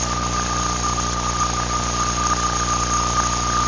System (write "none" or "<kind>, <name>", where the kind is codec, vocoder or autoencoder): none